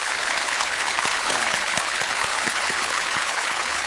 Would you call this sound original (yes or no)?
no